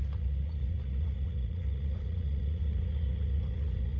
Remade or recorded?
remade